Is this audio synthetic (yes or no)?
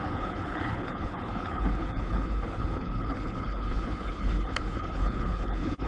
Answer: yes